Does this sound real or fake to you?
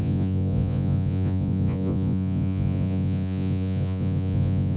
fake